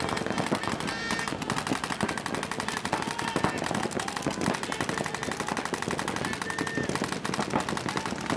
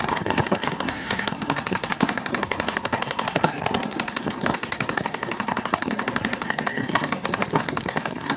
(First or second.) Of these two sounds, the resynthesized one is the second